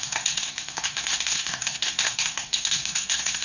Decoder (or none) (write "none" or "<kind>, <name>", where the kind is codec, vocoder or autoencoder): codec, SNAC